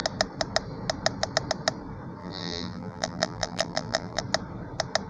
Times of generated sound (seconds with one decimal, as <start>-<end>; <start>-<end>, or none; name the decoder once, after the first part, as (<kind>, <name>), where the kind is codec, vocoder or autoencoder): 2.2-4.2 (vocoder, BigVGAN v2)